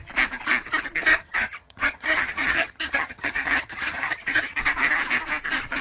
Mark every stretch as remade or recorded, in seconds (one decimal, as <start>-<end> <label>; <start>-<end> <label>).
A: 0.0-1.1 recorded; 1.1-4.6 remade; 4.6-5.8 recorded